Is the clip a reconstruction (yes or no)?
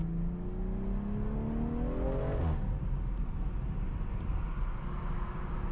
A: no